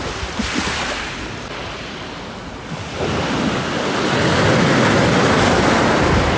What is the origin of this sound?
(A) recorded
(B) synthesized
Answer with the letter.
A